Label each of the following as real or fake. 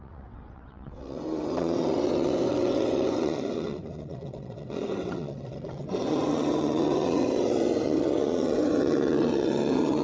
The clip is fake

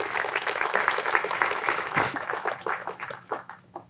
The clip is fake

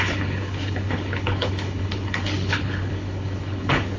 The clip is fake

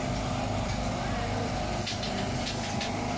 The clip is real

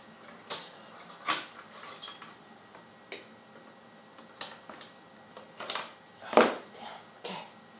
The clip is real